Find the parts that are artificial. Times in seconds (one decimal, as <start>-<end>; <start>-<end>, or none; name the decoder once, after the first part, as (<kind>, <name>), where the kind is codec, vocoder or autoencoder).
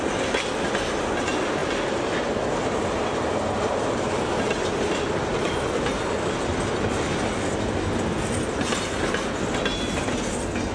none